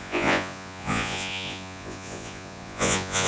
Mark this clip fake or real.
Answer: fake